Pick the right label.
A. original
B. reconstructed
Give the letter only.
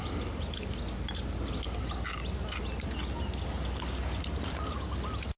A